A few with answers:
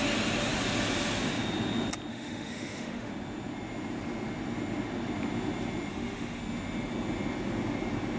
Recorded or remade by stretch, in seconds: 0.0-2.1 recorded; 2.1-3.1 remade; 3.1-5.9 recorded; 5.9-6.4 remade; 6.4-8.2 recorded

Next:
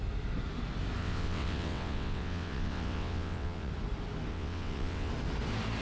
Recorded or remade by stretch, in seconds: 0.0-1.0 recorded; 1.0-3.7 remade; 3.7-4.3 recorded; 4.3-5.1 remade; 5.1-5.8 recorded